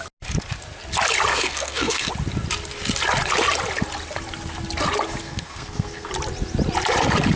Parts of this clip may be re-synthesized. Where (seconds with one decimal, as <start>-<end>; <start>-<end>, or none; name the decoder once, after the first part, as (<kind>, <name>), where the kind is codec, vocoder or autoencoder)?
1.3-2.1 (codec, SNAC); 5.2-6.1